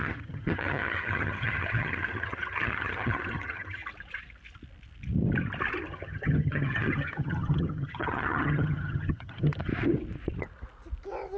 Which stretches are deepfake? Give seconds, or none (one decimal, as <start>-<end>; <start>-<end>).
0.0-3.8; 5.8-9.7